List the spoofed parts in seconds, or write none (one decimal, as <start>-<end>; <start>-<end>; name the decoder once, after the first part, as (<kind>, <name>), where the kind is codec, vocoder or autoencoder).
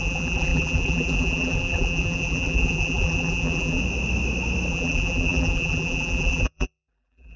0.0-3.8 (vocoder, BigVGAN v2); 4.7-7.4